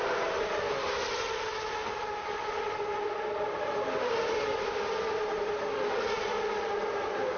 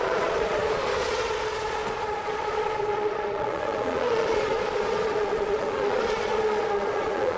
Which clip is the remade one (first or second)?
second